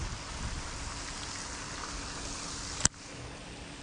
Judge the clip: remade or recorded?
recorded